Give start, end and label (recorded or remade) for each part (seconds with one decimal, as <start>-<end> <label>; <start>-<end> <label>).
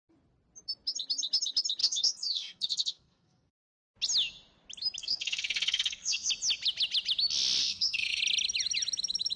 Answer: 0.0-1.8 recorded; 1.8-3.8 remade; 3.8-5.0 recorded; 5.0-6.3 remade; 6.3-7.6 recorded; 7.6-8.2 remade; 8.2-9.4 recorded